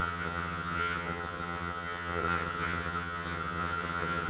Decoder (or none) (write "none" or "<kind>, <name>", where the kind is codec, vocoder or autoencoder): vocoder, HiFi-GAN